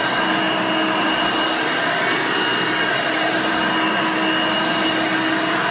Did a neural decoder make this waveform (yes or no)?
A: no